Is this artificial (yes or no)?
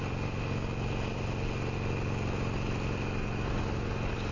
no